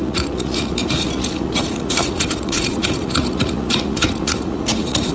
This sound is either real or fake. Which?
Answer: fake